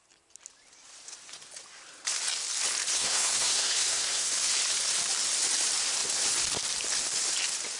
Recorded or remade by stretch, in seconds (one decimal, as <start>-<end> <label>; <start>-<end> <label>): 0.0-2.9 recorded; 2.9-4.3 remade; 4.3-7.8 recorded